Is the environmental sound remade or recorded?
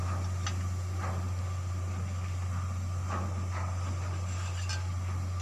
recorded